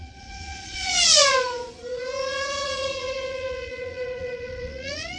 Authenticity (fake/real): fake